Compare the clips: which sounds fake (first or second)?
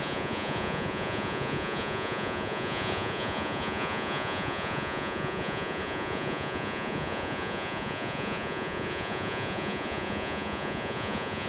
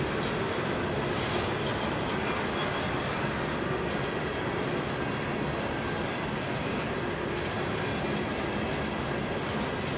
first